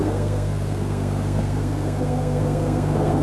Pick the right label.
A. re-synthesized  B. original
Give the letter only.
A